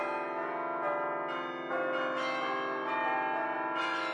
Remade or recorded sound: recorded